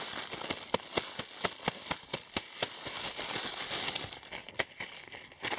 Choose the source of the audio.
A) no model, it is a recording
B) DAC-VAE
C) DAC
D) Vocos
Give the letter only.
A